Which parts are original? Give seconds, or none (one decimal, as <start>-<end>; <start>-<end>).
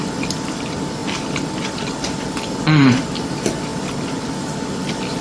0.0-5.2